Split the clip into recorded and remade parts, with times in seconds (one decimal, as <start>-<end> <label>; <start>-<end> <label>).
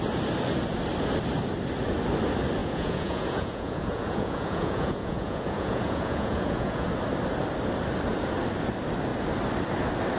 0.0-2.6 recorded; 2.6-6.9 remade; 6.9-10.2 recorded